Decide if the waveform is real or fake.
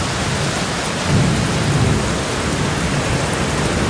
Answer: real